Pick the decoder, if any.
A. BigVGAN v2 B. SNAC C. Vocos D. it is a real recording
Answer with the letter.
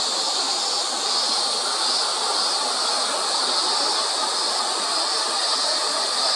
D